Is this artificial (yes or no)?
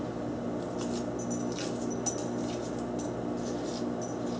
no